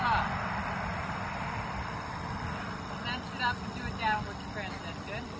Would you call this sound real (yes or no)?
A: yes